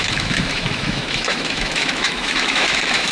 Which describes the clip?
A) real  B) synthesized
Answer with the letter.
B